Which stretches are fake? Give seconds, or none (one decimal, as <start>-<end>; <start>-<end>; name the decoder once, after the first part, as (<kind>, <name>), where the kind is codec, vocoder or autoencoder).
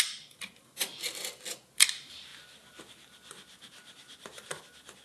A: none